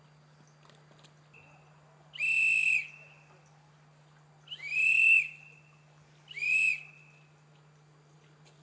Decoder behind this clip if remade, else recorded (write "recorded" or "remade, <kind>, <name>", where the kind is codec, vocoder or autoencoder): recorded